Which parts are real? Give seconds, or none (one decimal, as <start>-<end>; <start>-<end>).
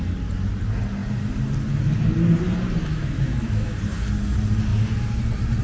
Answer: 0.0-2.9; 3.8-5.6